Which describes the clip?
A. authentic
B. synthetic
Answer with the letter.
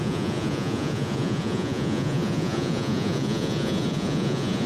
B